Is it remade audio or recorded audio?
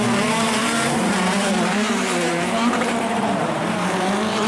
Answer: remade